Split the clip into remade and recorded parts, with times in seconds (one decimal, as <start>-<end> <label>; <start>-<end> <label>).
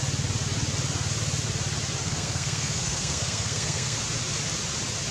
0.0-2.0 recorded; 2.0-4.0 remade; 4.0-5.1 recorded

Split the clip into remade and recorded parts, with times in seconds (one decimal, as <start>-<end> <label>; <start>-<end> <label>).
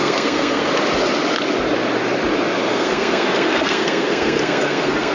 0.0-0.7 remade; 0.7-2.7 recorded; 2.7-5.1 remade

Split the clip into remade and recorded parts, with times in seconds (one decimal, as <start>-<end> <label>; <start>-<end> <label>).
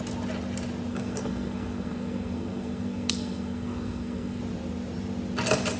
0.0-0.9 recorded; 0.9-4.4 remade; 4.4-5.8 recorded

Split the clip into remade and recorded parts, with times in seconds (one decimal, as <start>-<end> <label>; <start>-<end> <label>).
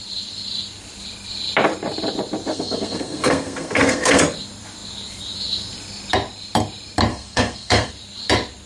0.0-2.5 recorded; 2.5-4.2 remade; 4.2-7.1 recorded; 7.1-7.9 remade; 7.9-8.7 recorded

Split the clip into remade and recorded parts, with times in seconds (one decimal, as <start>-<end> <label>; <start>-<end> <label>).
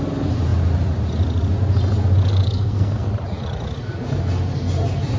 0.0-2.3 recorded; 2.3-3.1 remade; 3.1-5.2 recorded